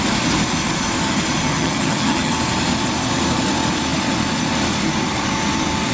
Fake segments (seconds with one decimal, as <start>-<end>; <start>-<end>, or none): 1.5-2.3